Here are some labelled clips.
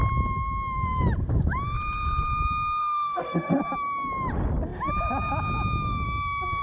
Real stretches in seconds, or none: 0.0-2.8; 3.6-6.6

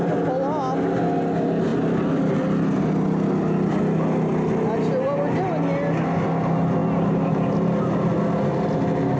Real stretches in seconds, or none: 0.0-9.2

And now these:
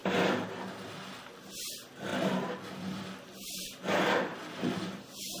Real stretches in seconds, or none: 0.0-2.1; 5.0-5.4

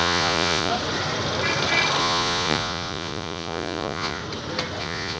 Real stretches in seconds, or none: 0.7-2.0; 4.2-4.8

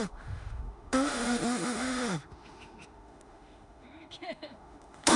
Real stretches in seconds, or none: none

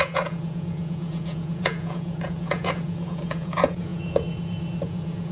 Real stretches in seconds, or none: none